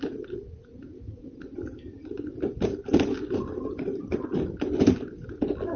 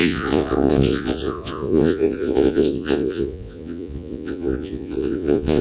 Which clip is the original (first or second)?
first